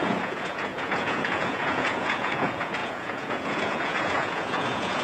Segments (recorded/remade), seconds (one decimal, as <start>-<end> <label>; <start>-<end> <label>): 0.0-5.0 remade